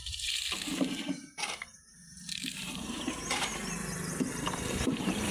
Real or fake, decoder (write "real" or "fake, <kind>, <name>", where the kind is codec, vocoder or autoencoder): fake, vocoder, BigVGAN v2